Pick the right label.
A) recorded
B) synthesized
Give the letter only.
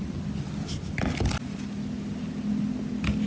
A